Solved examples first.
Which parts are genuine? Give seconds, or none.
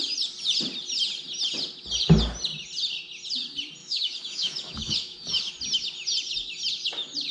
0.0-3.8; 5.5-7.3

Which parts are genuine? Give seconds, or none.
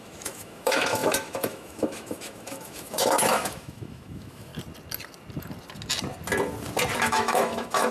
4.5-7.0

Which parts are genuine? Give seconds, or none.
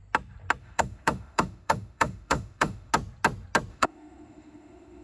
0.0-0.6; 2.9-3.7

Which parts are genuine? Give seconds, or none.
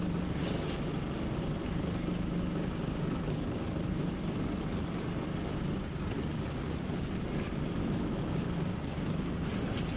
0.0-7.8; 8.3-10.0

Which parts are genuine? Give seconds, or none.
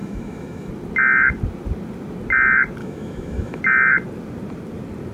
0.7-2.8; 3.6-5.1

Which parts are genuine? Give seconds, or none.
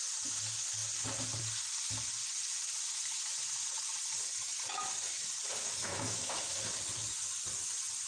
0.0-5.8; 6.7-8.1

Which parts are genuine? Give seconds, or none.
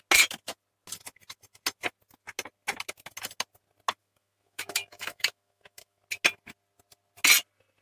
0.0-4.0; 6.0-7.8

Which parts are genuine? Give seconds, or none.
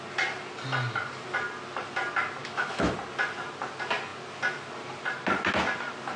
0.0-2.4; 2.9-6.2